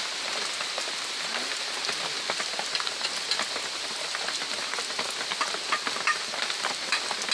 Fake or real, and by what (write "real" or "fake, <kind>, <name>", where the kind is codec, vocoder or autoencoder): real